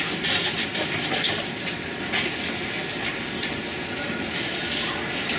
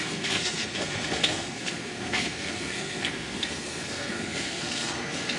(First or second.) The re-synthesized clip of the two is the second